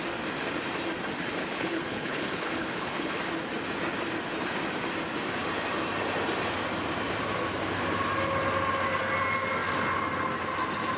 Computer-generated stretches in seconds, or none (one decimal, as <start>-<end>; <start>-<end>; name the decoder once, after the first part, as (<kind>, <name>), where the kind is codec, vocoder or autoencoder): 1.4-3.2 (codec, HILCodec)